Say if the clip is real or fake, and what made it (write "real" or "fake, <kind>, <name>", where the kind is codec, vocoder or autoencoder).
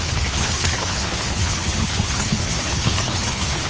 fake, codec, HILCodec